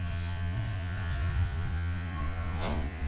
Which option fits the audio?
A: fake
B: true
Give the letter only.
A